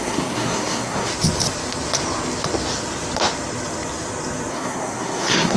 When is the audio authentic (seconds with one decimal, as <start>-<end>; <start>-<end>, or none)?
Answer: 1.1-4.5